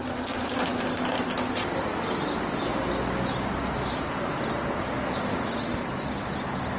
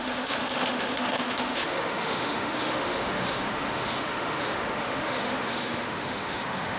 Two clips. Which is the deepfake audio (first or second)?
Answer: second